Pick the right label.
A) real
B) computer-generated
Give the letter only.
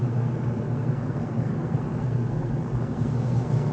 B